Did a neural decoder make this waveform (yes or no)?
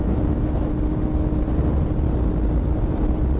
no